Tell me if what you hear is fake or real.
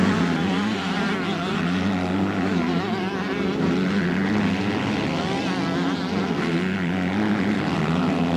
real